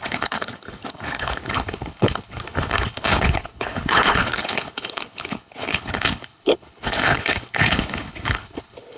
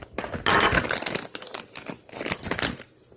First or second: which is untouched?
second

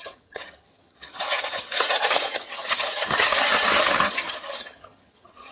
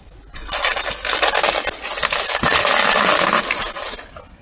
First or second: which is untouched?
second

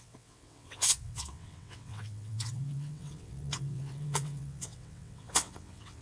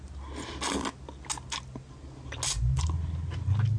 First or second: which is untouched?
second